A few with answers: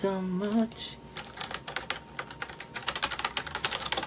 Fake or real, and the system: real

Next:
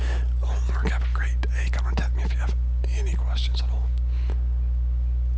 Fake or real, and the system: real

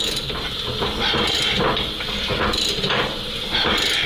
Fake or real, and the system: real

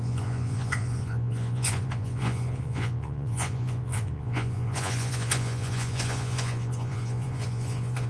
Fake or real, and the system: fake, vocoder, Vocos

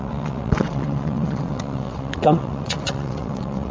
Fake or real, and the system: fake, vocoder, WaveNeXt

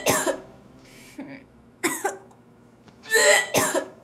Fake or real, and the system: fake, autoencoder, DAC-VAE